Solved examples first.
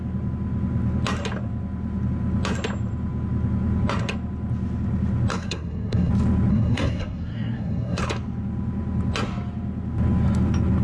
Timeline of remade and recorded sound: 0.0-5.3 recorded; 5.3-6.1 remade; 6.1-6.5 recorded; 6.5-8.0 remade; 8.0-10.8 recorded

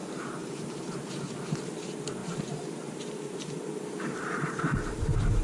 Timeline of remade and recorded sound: 0.0-1.3 remade; 1.3-2.2 recorded; 2.2-3.0 remade; 3.0-3.4 recorded; 3.4-5.4 remade

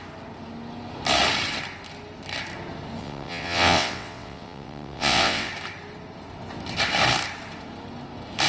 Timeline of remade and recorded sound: 0.0-3.0 recorded; 3.0-5.5 remade; 5.5-8.5 recorded

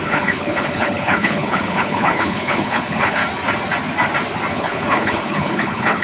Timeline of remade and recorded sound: 0.0-3.2 remade; 3.2-4.5 recorded; 4.5-6.0 remade

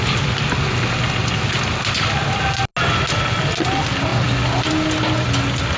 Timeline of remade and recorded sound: 0.0-5.8 recorded

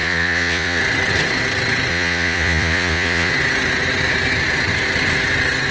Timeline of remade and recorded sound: 0.0-0.8 remade; 0.8-1.9 recorded; 1.9-3.3 remade; 3.3-5.7 recorded

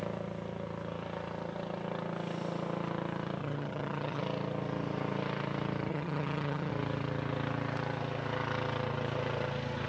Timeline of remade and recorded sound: 0.0-3.4 recorded; 3.4-4.2 remade; 4.2-5.9 recorded; 5.9-6.7 remade; 6.7-9.9 recorded

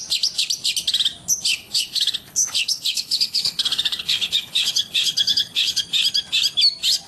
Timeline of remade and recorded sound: 0.0-1.5 recorded; 1.5-5.8 remade; 5.8-7.1 recorded